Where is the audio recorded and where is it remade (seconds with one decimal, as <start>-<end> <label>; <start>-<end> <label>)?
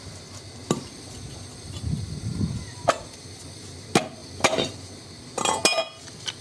0.0-0.6 recorded; 0.6-1.8 remade; 1.8-4.2 recorded; 4.2-4.7 remade; 4.7-6.4 recorded